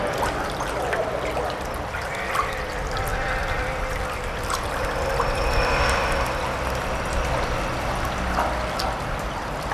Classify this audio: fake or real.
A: real